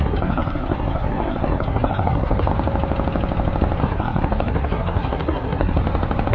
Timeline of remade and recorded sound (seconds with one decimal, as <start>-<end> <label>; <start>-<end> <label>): 0.0-2.5 remade; 2.5-3.8 recorded; 3.8-5.8 remade; 5.8-6.3 recorded